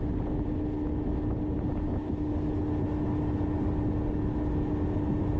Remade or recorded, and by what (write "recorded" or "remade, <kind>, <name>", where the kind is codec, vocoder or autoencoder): recorded